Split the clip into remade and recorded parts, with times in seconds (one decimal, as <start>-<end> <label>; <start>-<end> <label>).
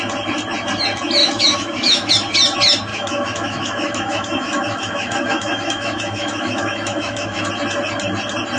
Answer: 0.0-1.2 recorded; 1.2-2.1 remade; 2.1-2.9 recorded; 2.9-7.5 remade; 7.5-8.6 recorded